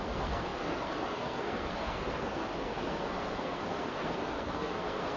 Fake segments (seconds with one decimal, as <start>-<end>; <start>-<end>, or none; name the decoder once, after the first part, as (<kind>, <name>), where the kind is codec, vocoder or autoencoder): 0.0-5.2 (codec, SNAC)